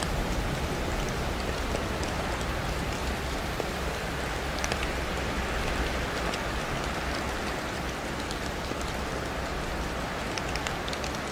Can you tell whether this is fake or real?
real